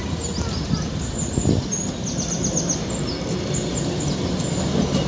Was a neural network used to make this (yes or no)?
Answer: no